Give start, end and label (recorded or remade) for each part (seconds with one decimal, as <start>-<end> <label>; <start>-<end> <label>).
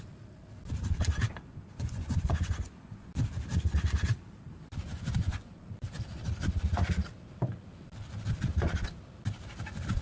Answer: 0.0-1.5 recorded; 1.5-3.1 remade; 3.1-4.9 recorded; 4.9-5.5 remade; 5.5-10.0 recorded